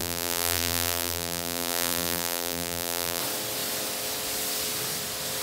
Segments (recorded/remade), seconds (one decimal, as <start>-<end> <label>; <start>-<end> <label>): 0.0-3.2 remade; 3.2-5.4 recorded